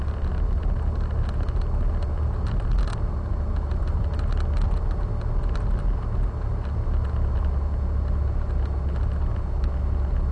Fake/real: real